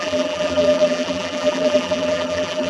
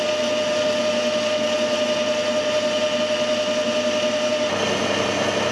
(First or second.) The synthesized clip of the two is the first